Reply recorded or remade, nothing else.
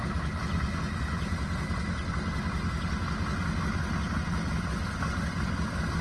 recorded